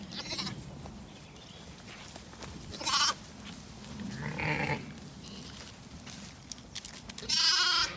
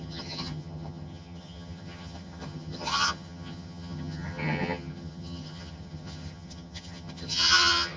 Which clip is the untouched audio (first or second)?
first